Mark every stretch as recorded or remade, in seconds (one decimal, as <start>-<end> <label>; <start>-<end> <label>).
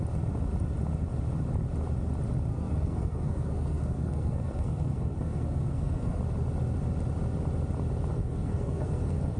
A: 0.0-2.5 recorded; 2.5-6.2 remade; 6.2-8.1 recorded; 8.1-9.4 remade